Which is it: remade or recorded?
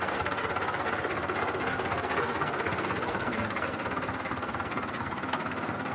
remade